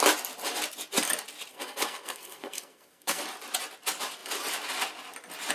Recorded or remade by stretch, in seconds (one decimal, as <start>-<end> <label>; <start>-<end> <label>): 0.0-1.5 recorded; 1.5-3.2 remade; 3.2-5.5 recorded